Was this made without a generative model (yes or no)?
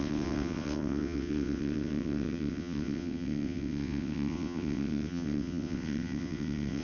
no